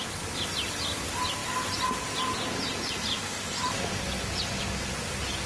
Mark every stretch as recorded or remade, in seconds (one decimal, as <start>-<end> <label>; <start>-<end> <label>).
0.0-5.5 recorded